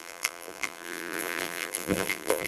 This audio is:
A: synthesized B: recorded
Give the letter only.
A